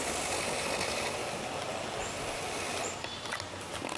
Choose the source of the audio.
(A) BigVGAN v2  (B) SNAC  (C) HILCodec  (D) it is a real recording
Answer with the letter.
D